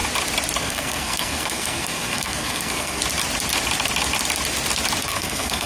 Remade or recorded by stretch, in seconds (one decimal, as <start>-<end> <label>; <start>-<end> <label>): 0.0-0.6 recorded; 0.6-3.0 remade; 3.0-5.0 recorded; 5.0-5.7 remade